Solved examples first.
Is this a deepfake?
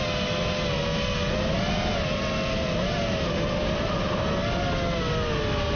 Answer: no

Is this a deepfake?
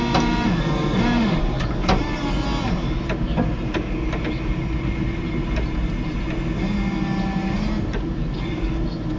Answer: no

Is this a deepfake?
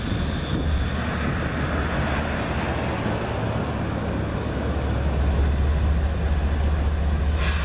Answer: no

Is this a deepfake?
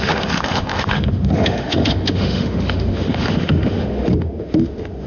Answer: yes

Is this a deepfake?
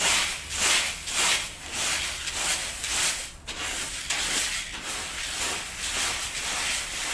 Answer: no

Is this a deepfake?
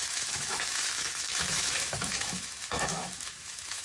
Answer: yes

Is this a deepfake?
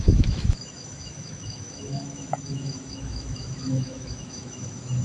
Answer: yes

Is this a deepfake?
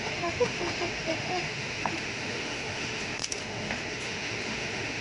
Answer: yes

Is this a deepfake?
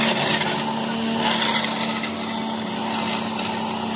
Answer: no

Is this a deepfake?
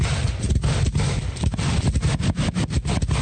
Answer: no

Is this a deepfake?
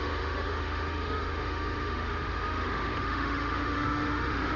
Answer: yes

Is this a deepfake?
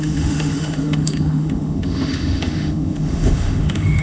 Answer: yes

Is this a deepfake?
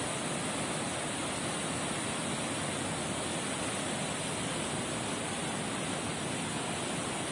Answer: no